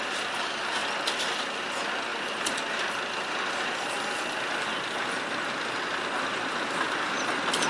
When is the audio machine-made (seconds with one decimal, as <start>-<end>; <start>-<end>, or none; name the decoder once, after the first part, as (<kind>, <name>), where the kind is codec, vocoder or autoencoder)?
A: none